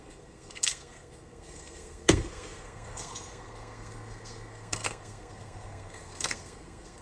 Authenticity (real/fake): fake